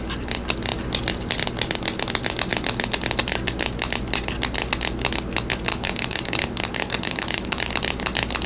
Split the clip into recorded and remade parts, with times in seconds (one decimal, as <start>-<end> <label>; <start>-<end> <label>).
0.0-5.7 recorded; 5.7-7.7 remade; 7.7-8.5 recorded